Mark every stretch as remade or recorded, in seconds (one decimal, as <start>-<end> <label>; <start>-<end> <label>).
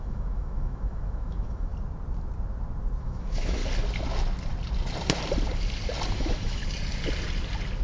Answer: 0.0-1.7 remade; 1.7-3.0 recorded; 3.0-3.6 remade; 3.6-6.1 recorded; 6.1-6.6 remade; 6.6-7.8 recorded